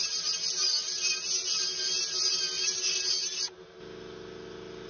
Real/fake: real